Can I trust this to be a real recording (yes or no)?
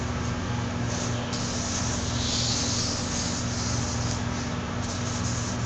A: yes